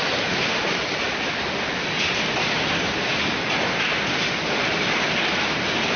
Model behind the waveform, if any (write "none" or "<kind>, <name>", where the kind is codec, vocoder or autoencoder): none